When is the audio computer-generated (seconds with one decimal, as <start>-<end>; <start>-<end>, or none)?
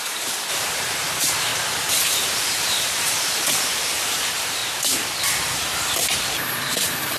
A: 0.0-1.5; 2.4-4.6; 5.8-7.2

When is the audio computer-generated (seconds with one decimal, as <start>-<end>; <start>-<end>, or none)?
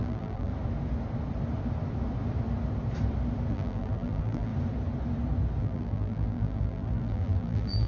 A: 0.0-0.5; 3.5-4.5; 5.6-7.9